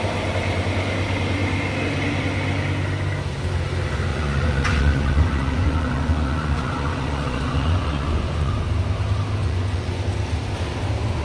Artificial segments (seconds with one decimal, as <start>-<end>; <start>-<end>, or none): 4.1-8.5; 9.4-10.0